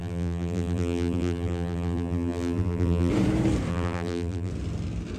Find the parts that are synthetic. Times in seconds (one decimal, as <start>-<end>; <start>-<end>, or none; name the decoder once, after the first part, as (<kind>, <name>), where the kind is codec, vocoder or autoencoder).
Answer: 0.0-3.1 (vocoder, BigVGAN v2); 3.7-4.5